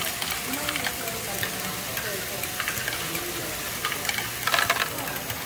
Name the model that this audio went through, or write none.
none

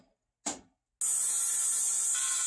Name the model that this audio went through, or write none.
none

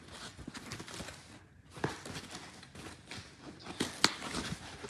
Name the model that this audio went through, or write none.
none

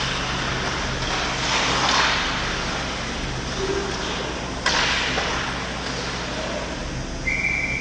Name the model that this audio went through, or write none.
none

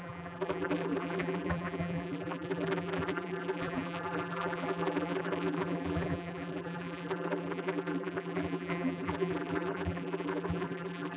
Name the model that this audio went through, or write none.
vocoder, BigVGAN v2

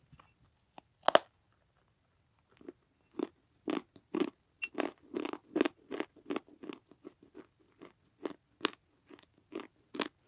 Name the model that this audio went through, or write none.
none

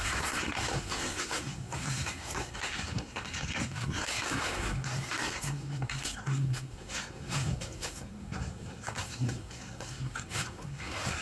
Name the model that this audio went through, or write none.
codec, SNAC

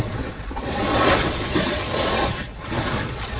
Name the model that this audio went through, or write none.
vocoder, Vocos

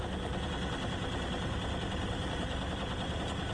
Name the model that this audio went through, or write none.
none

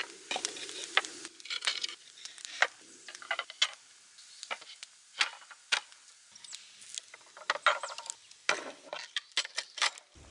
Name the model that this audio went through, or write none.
none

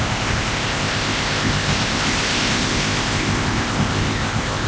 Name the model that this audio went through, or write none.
codec, ZipCodec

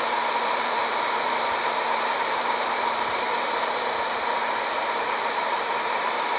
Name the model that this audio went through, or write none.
vocoder, BigVGAN v2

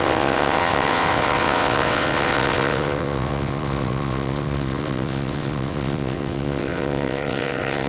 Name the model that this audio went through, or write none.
vocoder, WaveNeXt